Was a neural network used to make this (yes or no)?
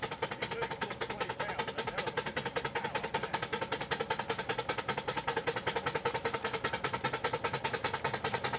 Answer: no